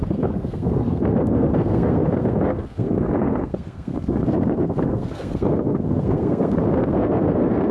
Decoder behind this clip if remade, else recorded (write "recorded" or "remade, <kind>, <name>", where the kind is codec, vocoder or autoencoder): remade, codec, SNAC